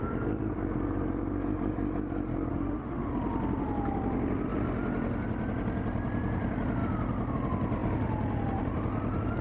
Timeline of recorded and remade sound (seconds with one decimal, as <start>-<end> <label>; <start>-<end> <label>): 0.0-2.5 recorded; 2.5-3.1 remade; 3.1-9.4 recorded